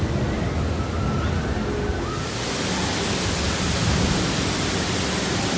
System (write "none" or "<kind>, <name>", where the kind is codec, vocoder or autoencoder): none